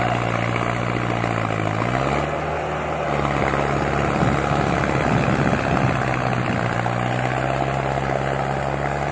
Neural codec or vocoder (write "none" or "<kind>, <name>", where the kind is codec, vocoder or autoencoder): none